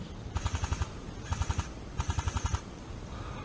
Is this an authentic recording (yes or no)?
yes